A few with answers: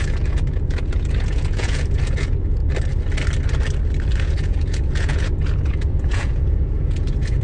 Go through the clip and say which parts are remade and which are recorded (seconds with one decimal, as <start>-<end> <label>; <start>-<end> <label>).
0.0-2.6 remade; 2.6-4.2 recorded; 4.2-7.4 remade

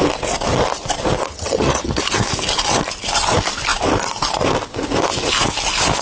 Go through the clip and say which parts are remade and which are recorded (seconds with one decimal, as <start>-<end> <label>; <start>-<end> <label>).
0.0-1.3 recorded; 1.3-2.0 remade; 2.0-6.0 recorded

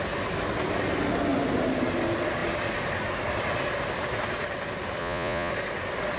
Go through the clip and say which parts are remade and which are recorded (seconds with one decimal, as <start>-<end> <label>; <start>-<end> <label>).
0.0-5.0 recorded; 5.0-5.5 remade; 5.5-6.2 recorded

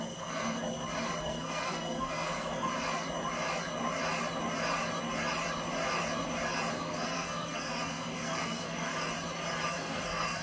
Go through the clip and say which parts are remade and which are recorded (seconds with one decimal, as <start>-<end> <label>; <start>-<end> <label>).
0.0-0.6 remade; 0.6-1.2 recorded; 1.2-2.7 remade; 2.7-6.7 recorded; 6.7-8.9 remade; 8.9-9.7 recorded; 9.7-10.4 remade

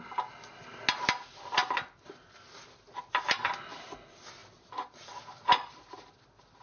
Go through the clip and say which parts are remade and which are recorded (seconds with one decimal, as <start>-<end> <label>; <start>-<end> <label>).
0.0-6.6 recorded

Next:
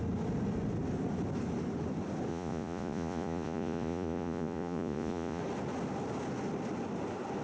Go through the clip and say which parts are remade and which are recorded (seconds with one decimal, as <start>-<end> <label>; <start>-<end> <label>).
0.0-2.3 recorded; 2.3-5.4 remade; 5.4-7.4 recorded

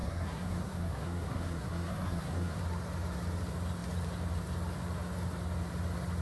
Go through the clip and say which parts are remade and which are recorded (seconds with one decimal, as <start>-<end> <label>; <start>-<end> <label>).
0.0-2.6 remade; 2.6-6.2 recorded